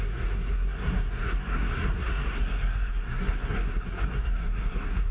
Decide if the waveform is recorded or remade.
remade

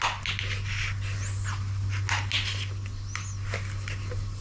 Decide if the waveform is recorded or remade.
recorded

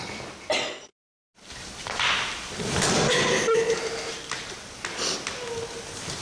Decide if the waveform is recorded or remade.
recorded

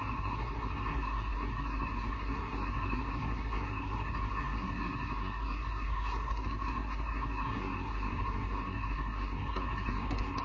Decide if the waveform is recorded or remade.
remade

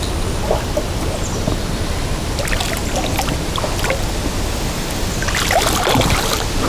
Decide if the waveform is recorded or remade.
recorded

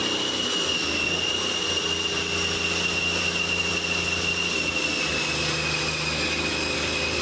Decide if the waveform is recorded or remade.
recorded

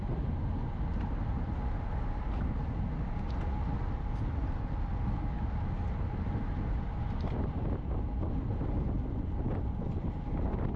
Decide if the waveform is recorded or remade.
recorded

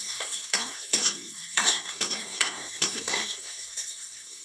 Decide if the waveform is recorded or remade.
remade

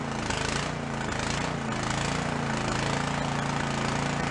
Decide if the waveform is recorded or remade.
recorded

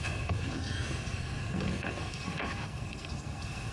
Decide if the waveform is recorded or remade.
remade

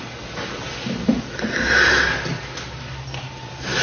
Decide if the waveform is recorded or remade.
recorded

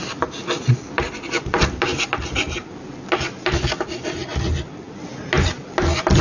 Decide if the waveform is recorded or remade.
recorded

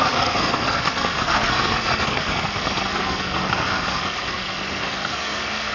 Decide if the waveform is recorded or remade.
remade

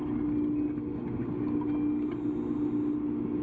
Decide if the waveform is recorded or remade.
recorded